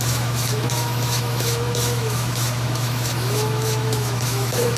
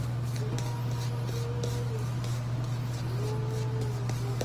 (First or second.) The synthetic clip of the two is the first